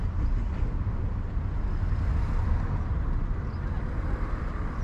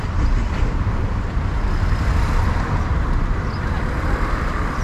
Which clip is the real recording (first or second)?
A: first